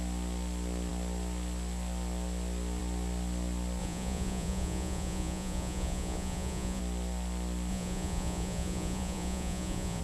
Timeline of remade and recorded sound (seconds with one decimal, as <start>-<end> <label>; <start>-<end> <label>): 0.0-3.8 recorded; 3.8-6.8 remade; 6.8-7.7 recorded; 7.7-10.0 remade